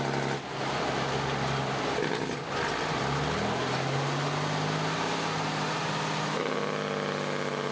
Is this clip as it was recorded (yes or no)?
yes